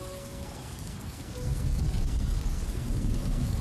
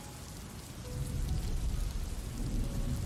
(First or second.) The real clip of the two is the second